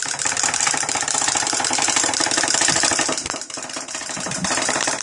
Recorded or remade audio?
remade